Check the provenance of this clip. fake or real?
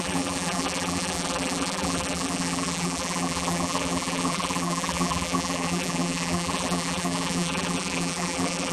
fake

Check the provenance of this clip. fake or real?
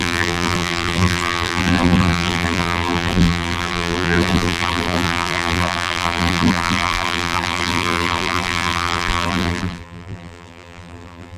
fake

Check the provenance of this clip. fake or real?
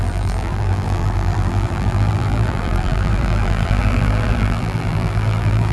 fake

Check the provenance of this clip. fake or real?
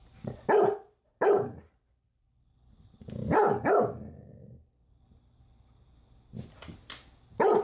fake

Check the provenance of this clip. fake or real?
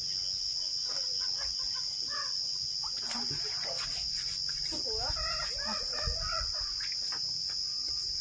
real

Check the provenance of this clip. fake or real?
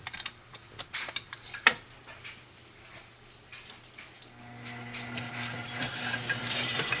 fake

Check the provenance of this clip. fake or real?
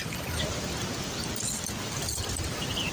real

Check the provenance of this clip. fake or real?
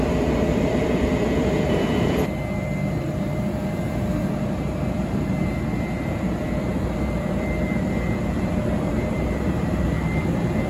fake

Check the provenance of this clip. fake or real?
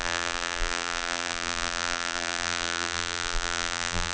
fake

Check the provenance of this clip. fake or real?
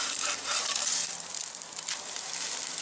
fake